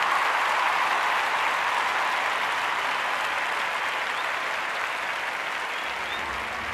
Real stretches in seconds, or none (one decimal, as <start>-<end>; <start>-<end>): 0.0-6.7

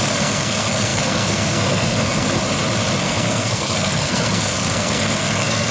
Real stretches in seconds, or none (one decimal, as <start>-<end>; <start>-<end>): 2.4-3.0

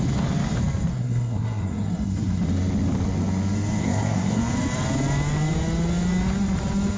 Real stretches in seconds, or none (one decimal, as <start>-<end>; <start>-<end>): 0.0-0.9; 2.4-3.8; 4.4-7.0

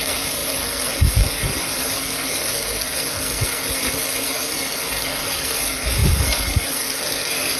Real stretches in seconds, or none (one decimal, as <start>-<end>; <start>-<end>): none

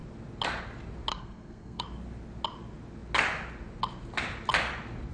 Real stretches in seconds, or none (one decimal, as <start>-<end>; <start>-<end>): 0.0-1.1; 1.8-5.1

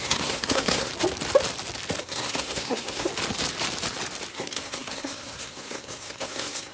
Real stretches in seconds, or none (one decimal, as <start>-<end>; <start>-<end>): 0.9-2.0; 3.1-4.3

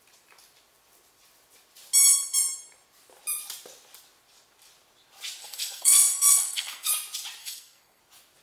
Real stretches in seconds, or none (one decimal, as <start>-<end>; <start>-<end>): 0.0-5.4; 6.9-7.4; 8.0-8.4